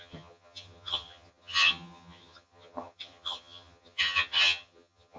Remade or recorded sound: remade